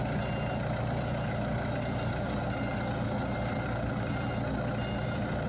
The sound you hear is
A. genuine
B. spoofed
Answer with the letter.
A